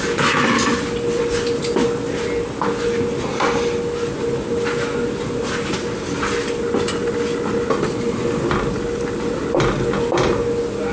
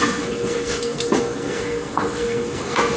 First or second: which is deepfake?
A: second